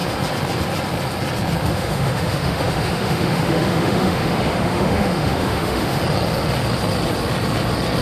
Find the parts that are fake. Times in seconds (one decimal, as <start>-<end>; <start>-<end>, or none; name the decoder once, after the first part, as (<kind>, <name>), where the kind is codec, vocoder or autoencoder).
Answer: 1.6-6.0 (autoencoder, DAC-VAE)

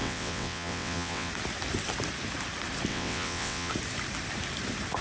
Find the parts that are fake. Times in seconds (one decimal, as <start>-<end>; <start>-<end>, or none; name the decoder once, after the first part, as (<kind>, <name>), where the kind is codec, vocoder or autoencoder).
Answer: 0.0-1.3 (vocoder, WaveNeXt); 2.9-3.7

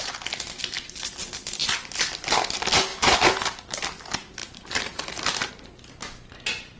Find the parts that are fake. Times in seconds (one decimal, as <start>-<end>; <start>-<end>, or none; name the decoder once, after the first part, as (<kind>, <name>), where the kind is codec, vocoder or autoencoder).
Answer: none

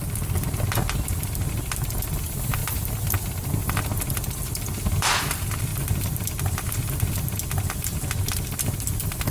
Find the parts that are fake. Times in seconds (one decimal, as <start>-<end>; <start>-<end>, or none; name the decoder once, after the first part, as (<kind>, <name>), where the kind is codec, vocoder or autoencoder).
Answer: none

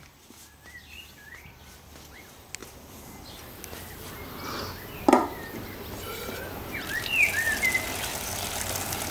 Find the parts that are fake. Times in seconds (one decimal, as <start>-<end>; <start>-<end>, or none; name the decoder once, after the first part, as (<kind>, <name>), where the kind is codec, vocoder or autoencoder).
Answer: none

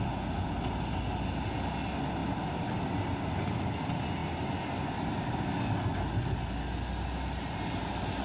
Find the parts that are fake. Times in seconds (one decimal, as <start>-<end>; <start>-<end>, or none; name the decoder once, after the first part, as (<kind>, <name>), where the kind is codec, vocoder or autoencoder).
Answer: none

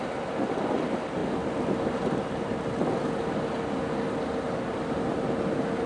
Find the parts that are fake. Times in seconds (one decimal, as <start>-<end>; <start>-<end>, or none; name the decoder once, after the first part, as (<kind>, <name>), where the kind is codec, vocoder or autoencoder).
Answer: none